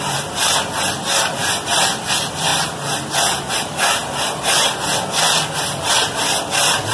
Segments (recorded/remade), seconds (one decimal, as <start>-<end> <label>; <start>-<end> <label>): 0.0-1.4 remade; 1.4-2.1 recorded; 2.1-2.5 remade; 2.5-3.5 recorded; 3.5-4.0 remade; 4.0-5.2 recorded; 5.2-6.9 remade